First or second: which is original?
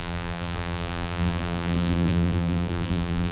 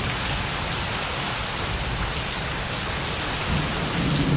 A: second